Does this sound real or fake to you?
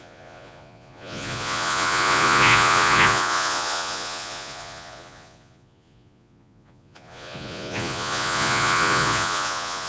fake